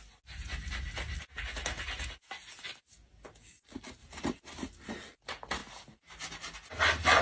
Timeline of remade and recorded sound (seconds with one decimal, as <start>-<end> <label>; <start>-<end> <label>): 0.0-7.2 recorded